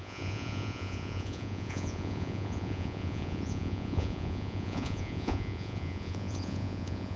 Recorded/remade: remade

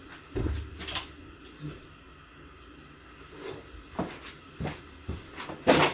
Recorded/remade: recorded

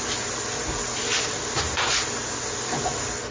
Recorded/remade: recorded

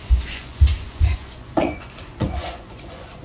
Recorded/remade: remade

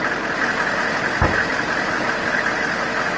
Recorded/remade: recorded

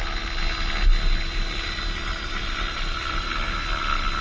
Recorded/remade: recorded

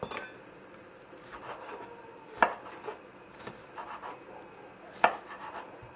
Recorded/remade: recorded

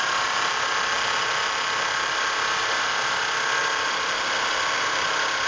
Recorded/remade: recorded